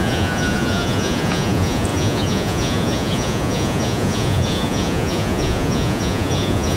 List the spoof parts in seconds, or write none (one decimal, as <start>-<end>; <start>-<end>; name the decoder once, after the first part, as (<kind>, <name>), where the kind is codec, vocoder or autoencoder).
0.0-6.8 (vocoder, Vocos)